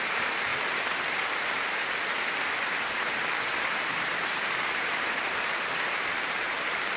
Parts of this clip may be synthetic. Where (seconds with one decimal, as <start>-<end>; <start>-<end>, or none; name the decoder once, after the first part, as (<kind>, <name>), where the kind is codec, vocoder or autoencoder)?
0.0-0.5 (vocoder, BigVGAN v2); 1.2-1.8; 3.6-7.0